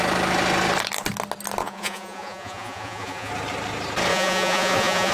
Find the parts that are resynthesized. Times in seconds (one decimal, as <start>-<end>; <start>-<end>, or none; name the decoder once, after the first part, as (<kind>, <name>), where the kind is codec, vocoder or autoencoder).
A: 1.6-3.3 (vocoder, Vocos); 4.1-5.1